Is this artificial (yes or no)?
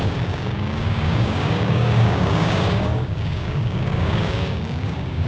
yes